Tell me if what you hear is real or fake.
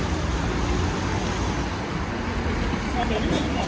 real